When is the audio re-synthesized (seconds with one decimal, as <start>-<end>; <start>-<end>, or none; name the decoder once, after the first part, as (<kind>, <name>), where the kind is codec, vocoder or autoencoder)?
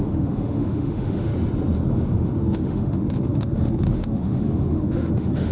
0.0-1.3 (autoencoder, DAC-VAE); 1.9-5.5